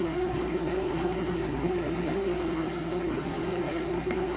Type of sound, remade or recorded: remade